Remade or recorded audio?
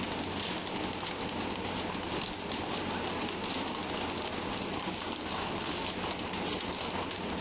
recorded